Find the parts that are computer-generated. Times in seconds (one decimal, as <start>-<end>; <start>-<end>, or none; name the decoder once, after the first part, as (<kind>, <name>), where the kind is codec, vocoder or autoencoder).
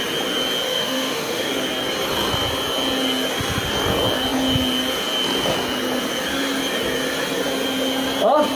0.7-1.5 (autoencoder, DAC-VAE)